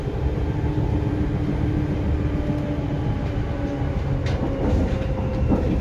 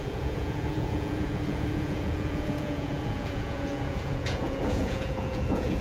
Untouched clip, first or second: first